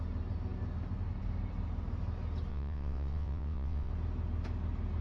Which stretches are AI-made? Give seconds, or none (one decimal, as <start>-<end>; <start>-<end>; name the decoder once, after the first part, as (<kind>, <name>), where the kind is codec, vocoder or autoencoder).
2.5-3.9 (vocoder, WaveNeXt)